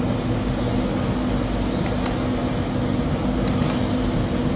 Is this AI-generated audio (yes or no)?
no